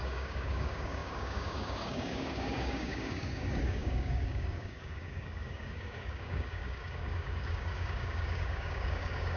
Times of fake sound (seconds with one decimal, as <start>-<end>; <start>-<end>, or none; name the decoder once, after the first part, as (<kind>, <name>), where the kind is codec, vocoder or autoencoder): 0.0-9.4 (codec, DAC)